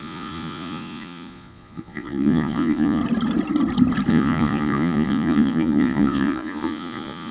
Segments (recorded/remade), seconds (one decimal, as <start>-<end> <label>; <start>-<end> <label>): 0.0-3.0 remade; 3.0-4.1 recorded; 4.1-7.3 remade